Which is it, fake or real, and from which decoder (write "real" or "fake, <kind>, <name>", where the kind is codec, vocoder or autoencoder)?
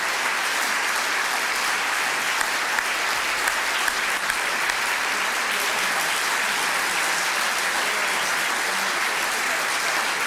real